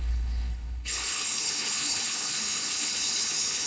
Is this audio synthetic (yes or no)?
yes